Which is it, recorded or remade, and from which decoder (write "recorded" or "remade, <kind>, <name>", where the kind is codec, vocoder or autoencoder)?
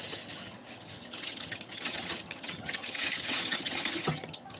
remade, vocoder, HiFi-GAN